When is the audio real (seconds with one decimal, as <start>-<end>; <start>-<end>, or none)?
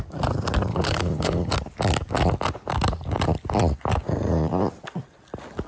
0.0-0.7; 1.5-5.7